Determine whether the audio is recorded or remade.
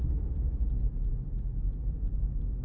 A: recorded